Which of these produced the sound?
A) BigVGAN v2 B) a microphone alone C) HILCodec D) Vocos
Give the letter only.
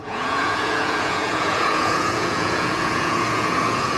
D